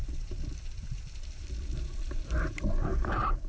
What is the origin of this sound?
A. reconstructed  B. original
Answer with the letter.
A